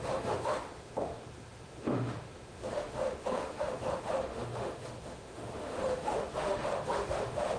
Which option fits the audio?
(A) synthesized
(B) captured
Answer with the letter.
A